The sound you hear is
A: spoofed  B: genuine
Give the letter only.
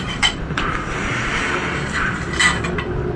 A